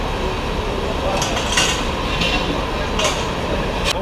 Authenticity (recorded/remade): recorded